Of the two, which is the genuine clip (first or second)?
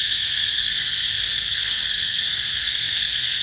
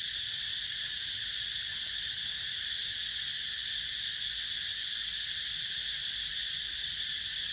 second